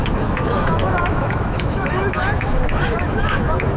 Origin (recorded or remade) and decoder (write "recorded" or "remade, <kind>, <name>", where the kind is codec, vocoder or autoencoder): remade, autoencoder, DAC-VAE